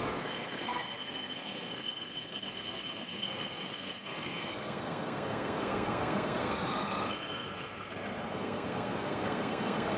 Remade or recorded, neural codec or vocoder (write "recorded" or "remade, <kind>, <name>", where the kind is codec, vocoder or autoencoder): remade, codec, SNAC